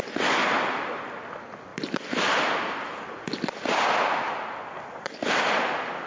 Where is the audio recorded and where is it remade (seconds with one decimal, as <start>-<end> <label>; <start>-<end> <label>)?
0.0-6.1 recorded